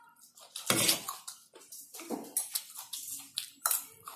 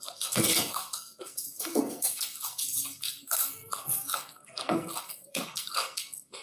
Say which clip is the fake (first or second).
second